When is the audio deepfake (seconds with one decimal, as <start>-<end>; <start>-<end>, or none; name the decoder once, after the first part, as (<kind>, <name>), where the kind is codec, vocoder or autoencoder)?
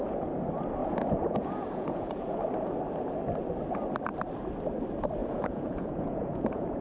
0.8-2.4 (vocoder, Vocos); 5.2-6.8